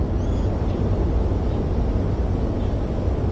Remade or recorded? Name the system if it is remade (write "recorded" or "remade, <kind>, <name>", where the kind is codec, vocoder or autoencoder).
recorded